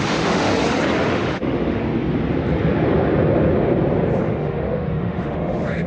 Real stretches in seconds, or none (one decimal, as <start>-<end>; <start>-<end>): 0.5-1.1; 1.8-4.2